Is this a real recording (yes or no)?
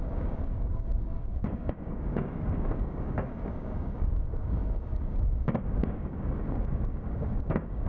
no